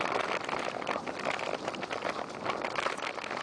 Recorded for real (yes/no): yes